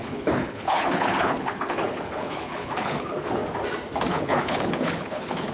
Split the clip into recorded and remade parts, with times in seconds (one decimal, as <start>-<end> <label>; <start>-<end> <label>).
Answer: 0.0-3.4 remade; 3.4-4.1 recorded; 4.1-5.5 remade